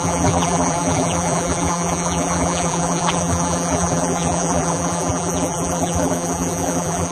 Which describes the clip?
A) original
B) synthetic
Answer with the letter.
B